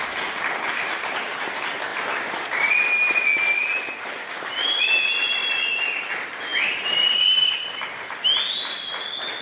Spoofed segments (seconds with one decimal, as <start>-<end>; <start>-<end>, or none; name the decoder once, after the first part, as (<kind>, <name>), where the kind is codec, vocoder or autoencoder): none